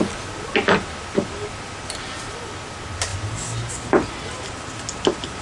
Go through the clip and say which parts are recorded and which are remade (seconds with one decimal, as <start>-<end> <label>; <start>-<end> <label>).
0.0-5.4 recorded